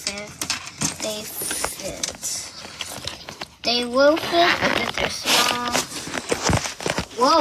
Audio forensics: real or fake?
real